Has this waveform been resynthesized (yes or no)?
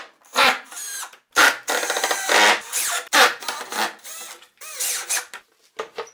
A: no